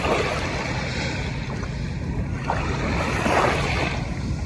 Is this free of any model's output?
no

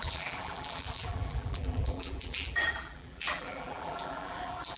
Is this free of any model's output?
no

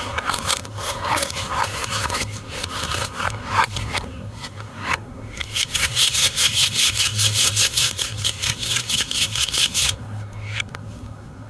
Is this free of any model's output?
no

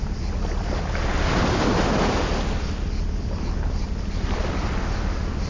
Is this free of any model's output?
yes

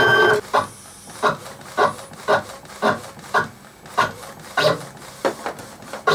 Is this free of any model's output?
yes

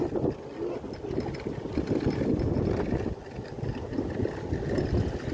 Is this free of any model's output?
yes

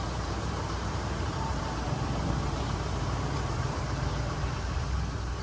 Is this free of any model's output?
no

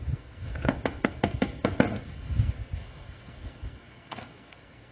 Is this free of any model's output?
no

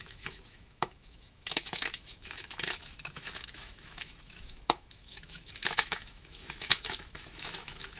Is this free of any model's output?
no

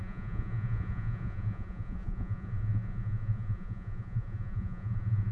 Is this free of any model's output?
no